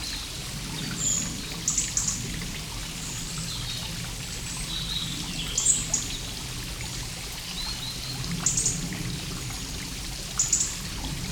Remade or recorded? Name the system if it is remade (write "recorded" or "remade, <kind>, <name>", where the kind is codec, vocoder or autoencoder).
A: recorded